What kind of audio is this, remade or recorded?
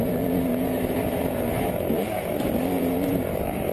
remade